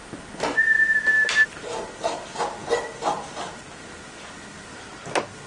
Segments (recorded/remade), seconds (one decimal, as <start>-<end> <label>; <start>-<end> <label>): 0.0-5.5 recorded